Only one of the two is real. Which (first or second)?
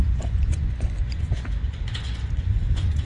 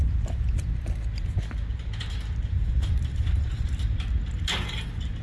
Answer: second